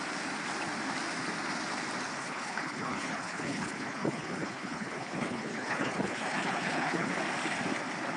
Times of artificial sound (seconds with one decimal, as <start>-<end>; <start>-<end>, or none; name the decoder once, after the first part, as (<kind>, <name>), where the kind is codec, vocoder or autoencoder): 2.2-7.1 (codec, HILCodec)